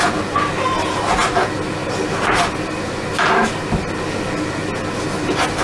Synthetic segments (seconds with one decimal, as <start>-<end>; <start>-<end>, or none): none